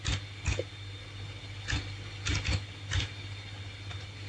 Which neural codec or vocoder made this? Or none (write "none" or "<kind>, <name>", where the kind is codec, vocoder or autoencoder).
none